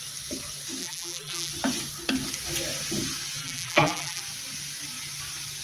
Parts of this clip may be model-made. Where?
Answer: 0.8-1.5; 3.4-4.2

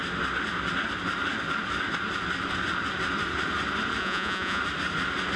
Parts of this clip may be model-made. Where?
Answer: 4.0-4.6